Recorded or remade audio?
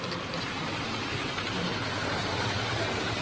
recorded